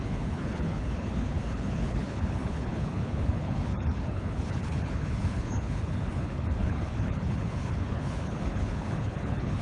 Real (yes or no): no